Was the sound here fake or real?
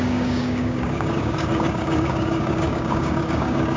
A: fake